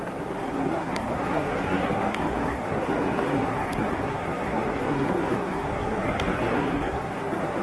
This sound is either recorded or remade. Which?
remade